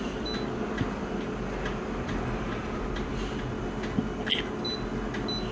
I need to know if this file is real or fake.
real